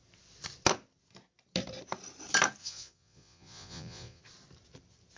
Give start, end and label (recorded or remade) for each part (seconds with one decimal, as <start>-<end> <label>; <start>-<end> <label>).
0.0-2.6 recorded; 2.6-4.2 remade; 4.2-5.2 recorded